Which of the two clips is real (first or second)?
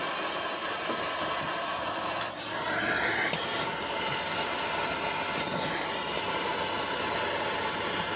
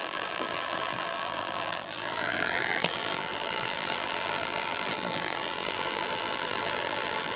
first